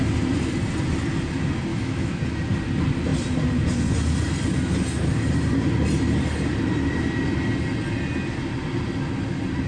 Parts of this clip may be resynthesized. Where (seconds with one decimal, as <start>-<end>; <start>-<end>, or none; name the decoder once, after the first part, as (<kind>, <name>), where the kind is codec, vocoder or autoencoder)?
1.7-2.2 (autoencoder, DAC-VAE)